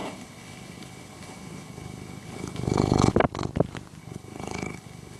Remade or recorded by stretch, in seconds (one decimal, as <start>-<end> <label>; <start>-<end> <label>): 0.0-3.1 remade; 3.1-4.0 recorded; 4.0-5.2 remade